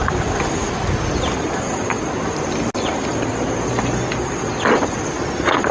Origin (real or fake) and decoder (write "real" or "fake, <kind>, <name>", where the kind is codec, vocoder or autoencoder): real